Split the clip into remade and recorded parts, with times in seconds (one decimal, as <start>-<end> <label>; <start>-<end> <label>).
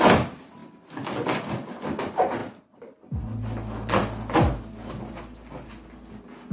0.0-6.5 recorded